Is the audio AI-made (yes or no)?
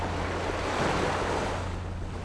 no